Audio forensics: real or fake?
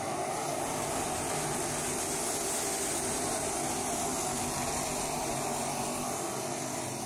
real